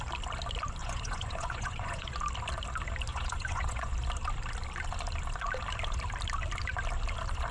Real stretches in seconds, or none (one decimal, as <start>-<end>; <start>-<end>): 0.0-0.8; 2.1-3.1; 3.9-7.5